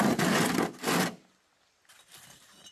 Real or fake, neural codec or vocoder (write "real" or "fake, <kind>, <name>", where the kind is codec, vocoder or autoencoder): real